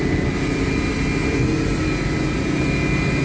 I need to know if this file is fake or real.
real